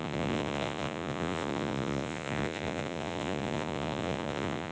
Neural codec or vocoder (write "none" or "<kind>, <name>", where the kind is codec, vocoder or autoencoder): vocoder, Vocos